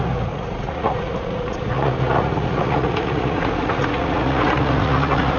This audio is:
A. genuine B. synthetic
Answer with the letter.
B